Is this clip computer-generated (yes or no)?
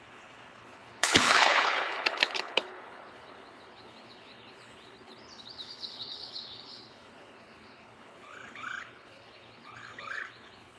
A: yes